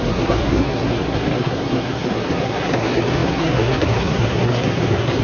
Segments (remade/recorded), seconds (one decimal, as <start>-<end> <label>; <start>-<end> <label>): 0.0-5.2 remade